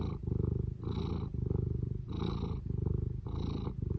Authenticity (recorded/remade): recorded